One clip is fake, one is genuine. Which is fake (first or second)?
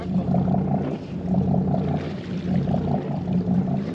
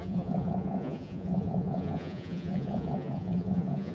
second